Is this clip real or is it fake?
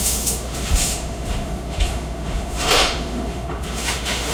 fake